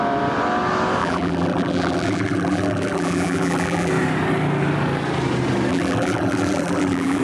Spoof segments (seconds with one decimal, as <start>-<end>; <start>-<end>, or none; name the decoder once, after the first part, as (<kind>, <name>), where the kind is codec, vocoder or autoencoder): 1.0-3.9 (vocoder, BigVGAN v2); 5.7-7.2